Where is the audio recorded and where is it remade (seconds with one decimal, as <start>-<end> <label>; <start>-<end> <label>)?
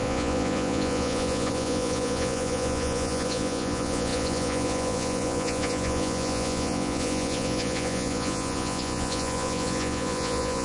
0.0-10.6 remade